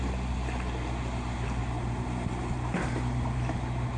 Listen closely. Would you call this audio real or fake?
real